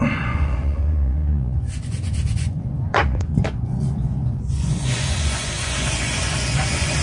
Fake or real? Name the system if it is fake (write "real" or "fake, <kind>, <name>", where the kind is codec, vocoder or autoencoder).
fake, vocoder, Vocos